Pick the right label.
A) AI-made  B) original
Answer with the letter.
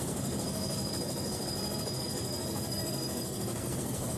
A